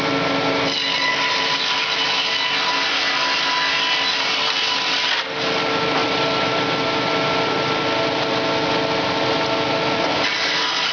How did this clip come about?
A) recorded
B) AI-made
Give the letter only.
A